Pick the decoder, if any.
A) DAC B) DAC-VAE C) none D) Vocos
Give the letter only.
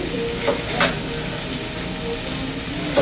C